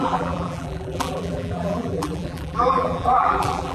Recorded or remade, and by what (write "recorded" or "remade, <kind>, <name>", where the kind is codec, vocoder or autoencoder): remade, vocoder, BigVGAN v2